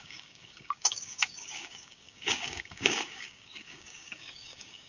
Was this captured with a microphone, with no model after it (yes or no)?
no